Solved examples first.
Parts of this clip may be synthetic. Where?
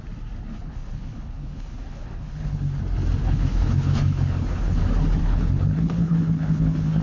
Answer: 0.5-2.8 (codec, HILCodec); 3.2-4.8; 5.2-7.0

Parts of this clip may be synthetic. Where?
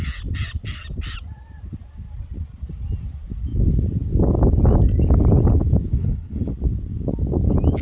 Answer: 5.9-6.5 (codec, HILCodec)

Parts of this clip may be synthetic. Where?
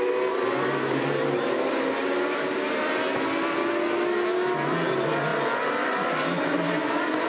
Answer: none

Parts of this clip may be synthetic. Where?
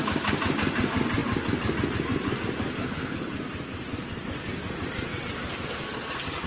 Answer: 2.8-3.3 (codec, HILCodec)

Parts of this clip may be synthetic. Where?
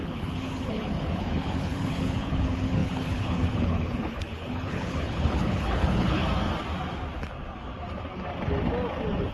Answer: 0.0-6.2 (codec, HILCodec)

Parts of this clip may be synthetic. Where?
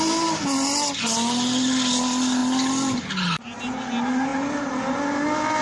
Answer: none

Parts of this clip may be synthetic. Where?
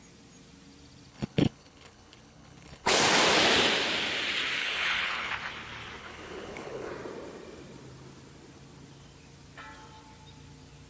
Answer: 1.1-3.0 (codec, HILCodec); 4.6-5.3; 6.0-6.9